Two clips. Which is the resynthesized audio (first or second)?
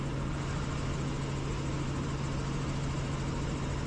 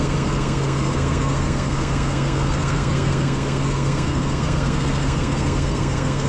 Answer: second